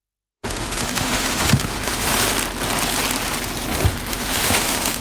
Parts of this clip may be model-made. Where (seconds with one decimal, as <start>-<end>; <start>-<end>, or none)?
0.0-2.1; 4.1-5.0